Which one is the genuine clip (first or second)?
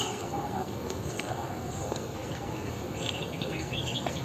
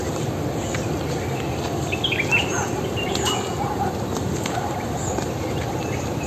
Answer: second